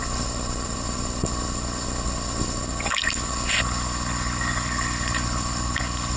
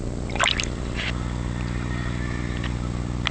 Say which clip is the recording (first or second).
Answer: second